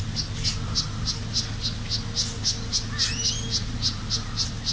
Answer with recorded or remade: recorded